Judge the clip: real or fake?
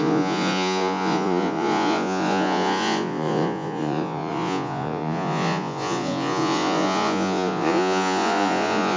fake